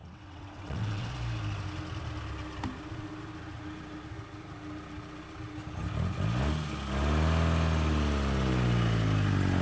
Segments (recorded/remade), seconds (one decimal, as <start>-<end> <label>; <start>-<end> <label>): 0.0-1.1 remade; 1.1-9.6 recorded